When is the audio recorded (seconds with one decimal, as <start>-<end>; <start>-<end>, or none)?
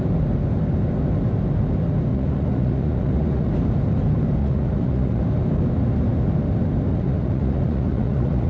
0.0-2.1; 3.5-4.4; 5.2-6.9